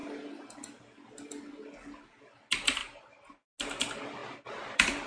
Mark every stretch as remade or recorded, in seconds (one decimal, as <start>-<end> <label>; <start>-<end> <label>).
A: 0.0-5.1 recorded